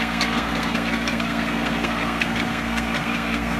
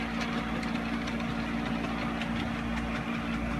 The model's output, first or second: first